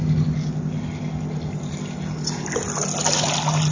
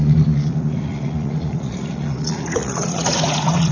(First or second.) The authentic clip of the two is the first